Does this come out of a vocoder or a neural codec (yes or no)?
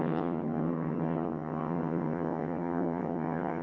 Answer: yes